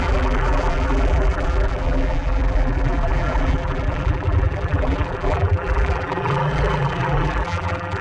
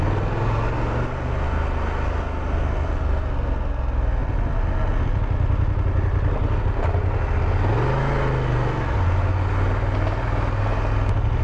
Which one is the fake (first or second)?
first